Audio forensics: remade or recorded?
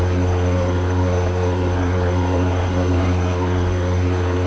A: remade